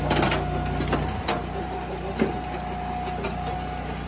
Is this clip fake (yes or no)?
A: no